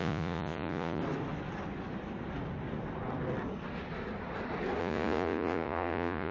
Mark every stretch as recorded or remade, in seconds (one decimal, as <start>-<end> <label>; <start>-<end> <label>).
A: 0.0-1.0 remade; 1.0-4.8 recorded; 4.8-6.3 remade